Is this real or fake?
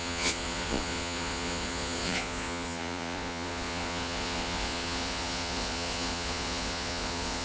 fake